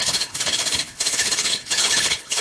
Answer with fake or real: fake